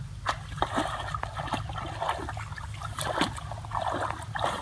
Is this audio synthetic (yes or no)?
no